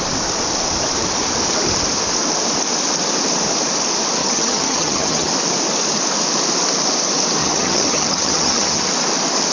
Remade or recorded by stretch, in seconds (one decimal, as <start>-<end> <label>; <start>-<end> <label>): 0.0-4.2 recorded; 4.2-5.3 remade; 5.3-7.4 recorded; 7.4-8.9 remade; 8.9-9.5 recorded